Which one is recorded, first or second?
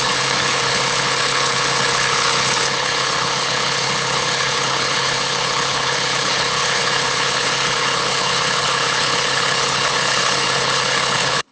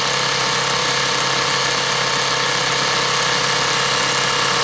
second